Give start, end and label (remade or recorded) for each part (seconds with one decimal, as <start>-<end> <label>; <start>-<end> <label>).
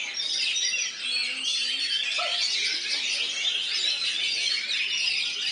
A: 0.0-5.5 recorded